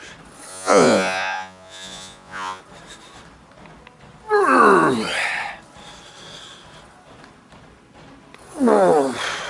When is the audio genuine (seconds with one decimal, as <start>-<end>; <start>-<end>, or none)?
0.0-0.5; 2.6-9.5